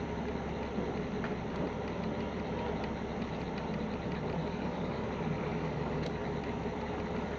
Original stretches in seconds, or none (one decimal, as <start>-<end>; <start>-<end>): 0.0-4.4; 5.1-5.5; 6.2-7.4